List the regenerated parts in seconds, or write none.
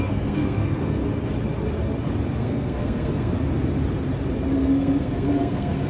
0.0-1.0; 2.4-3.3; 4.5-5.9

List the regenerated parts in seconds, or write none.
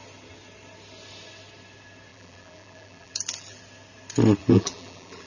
2.1-3.6; 4.4-5.3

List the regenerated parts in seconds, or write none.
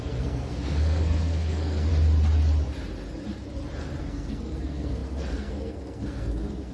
0.0-1.9; 4.0-6.7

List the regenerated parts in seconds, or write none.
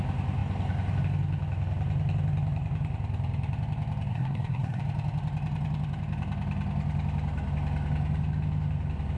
4.1-4.8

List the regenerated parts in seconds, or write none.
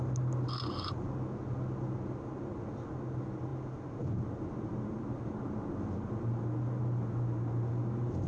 none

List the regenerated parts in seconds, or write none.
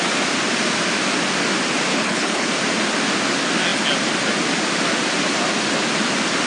1.9-2.5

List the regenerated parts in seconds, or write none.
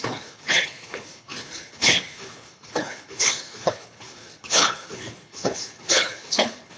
0.0-6.8